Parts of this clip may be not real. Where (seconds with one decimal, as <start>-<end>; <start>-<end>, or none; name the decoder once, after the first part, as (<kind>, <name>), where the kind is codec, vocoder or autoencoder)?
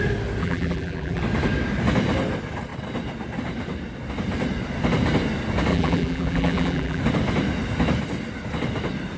0.4-1.2 (vocoder, BigVGAN v2); 5.7-7.0